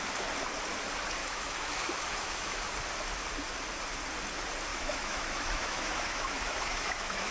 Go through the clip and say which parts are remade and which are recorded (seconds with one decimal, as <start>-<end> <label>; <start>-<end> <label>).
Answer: 0.0-1.2 recorded; 1.2-2.6 remade; 2.6-4.7 recorded; 4.7-7.3 remade